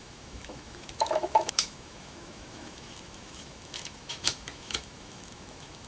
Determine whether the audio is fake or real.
fake